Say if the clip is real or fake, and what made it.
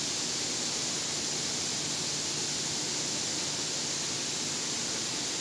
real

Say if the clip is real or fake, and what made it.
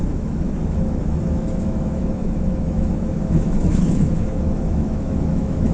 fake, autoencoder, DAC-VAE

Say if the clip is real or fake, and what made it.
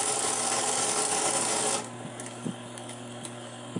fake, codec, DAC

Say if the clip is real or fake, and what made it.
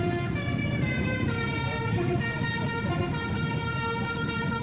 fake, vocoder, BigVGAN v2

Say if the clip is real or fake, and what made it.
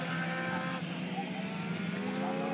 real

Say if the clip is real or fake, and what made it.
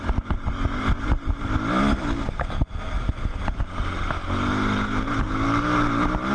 real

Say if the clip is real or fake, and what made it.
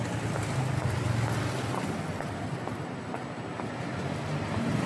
real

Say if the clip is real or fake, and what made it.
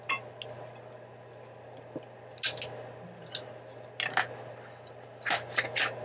real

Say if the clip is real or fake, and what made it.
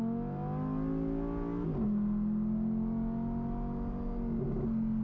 real